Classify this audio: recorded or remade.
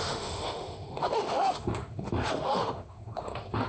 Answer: remade